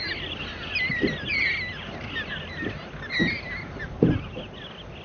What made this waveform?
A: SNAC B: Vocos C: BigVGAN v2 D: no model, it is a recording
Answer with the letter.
D